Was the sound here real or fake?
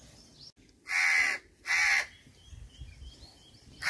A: real